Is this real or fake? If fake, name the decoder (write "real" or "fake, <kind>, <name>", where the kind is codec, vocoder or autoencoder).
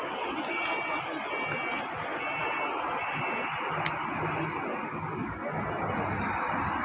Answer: real